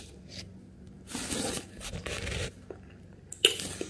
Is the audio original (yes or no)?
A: yes